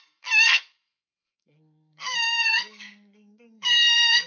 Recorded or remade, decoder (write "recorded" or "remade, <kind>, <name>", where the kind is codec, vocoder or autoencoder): remade, codec, SNAC